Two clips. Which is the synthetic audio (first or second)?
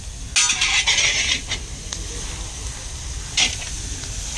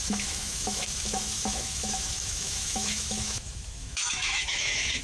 second